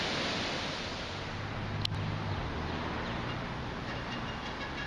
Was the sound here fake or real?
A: real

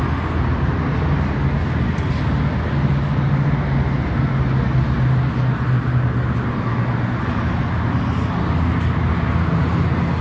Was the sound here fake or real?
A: real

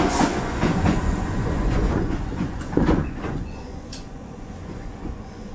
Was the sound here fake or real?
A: fake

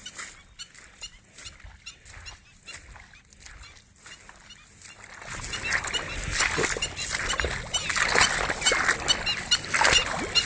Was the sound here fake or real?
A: real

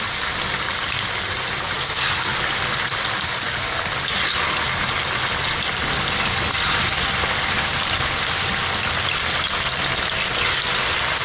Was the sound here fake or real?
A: real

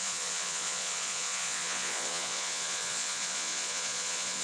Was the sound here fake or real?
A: fake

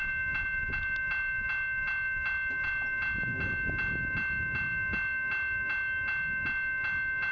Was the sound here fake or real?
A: real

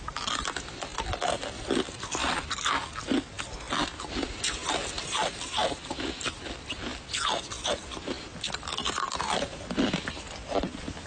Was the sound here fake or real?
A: real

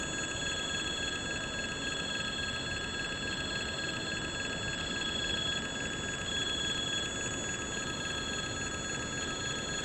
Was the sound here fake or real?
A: real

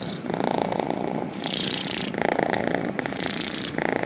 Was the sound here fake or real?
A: fake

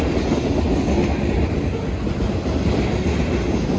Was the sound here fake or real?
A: real